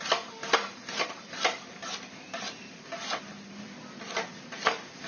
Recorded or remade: recorded